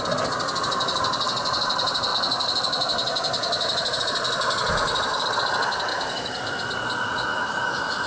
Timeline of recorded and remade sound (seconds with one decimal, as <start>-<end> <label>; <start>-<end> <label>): 0.0-5.9 recorded; 5.9-6.7 remade; 6.7-7.3 recorded; 7.3-8.1 remade